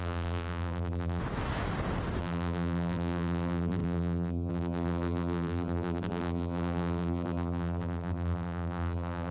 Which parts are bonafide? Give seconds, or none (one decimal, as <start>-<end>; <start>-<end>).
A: 1.2-2.2